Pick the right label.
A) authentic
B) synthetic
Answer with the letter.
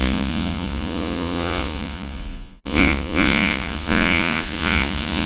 B